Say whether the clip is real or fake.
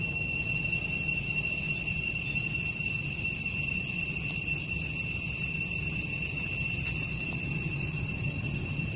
real